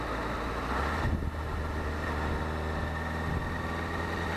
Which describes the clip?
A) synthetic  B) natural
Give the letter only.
B